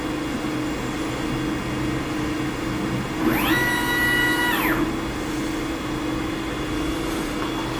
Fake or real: real